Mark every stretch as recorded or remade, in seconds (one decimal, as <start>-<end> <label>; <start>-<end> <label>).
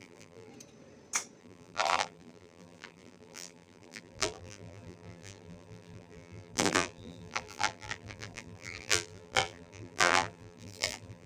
0.0-0.5 remade; 0.5-1.4 recorded; 1.4-11.3 remade